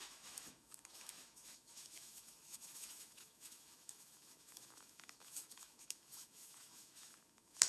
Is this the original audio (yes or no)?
no